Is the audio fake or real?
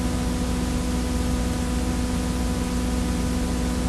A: real